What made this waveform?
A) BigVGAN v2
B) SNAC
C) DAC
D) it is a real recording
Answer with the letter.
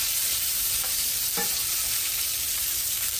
A